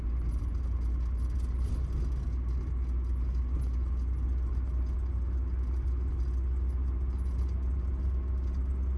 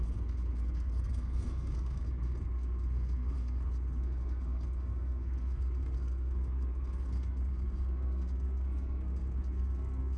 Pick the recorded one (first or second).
first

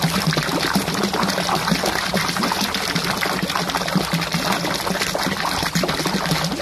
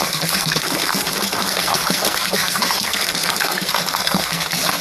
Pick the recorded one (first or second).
first